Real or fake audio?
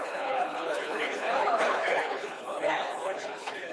fake